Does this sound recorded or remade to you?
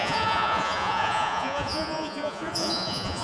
remade